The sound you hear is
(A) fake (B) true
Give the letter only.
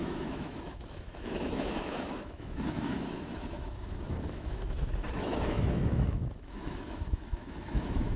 A